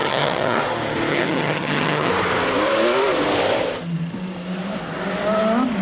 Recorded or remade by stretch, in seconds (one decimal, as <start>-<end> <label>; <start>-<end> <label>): 0.0-0.6 remade; 0.6-1.1 recorded; 1.1-2.1 remade; 2.1-5.8 recorded